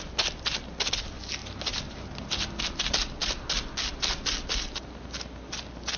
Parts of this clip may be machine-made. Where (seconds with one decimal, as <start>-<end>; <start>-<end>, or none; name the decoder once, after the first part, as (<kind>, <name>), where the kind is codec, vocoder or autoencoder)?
none